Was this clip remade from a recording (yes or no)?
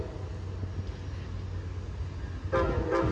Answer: no